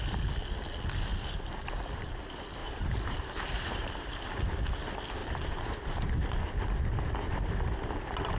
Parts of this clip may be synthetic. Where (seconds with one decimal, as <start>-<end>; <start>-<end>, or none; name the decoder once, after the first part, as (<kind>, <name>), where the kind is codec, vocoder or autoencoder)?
1.1-1.7 (vocoder, BigVGAN v2); 2.6-4.5; 5.2-6.0